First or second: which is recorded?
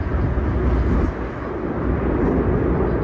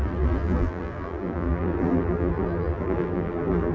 first